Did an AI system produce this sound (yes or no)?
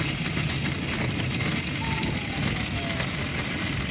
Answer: no